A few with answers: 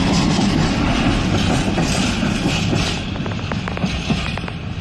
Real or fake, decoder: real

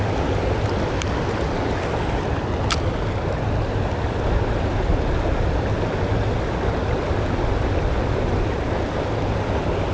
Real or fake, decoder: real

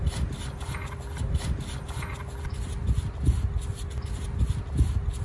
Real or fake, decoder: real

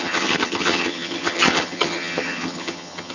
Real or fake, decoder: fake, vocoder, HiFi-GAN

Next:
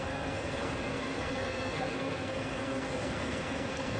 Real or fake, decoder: fake, codec, SNAC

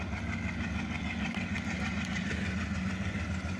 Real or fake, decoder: real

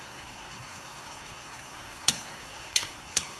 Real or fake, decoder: fake, codec, SNAC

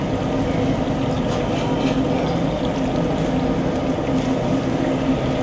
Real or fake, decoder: real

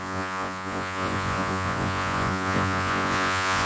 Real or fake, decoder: fake, vocoder, Vocos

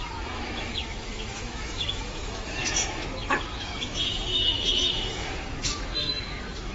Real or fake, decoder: fake, autoencoder, DAC-VAE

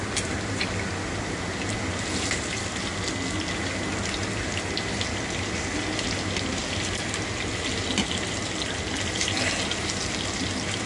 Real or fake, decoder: real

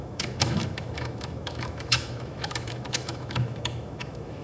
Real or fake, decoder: fake, autoencoder, DAC-VAE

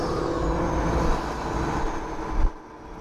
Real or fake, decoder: real